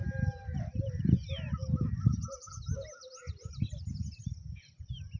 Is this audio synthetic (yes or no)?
no